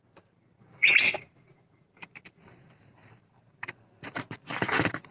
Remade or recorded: remade